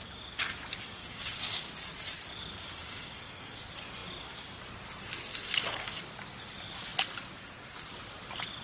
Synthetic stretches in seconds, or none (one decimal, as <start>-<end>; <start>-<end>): 1.0-1.7; 2.8-3.6; 5.3-6.0